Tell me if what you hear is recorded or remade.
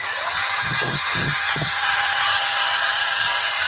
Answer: remade